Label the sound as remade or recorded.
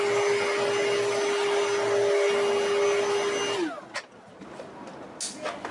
recorded